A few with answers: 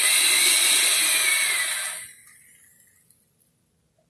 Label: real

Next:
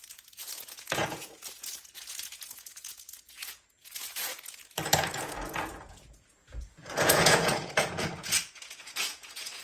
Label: fake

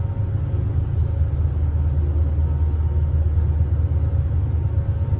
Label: real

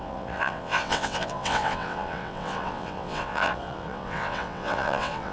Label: fake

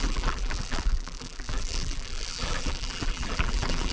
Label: fake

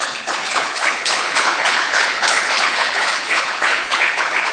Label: fake